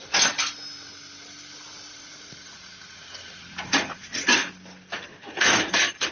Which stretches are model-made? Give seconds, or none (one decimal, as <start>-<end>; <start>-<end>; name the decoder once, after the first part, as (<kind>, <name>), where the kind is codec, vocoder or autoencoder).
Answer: 1.9-4.5 (vocoder, Vocos); 5.2-6.1